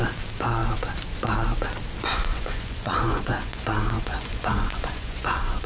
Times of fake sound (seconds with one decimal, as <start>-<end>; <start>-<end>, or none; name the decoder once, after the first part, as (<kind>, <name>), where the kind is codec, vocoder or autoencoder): 2.1-5.7 (vocoder, Vocos)